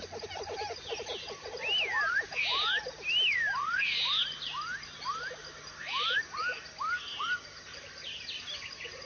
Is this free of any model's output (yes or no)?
yes